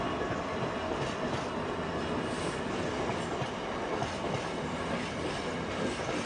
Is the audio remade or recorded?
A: recorded